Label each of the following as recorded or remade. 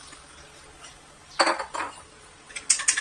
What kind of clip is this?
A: recorded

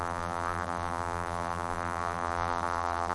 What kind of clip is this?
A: remade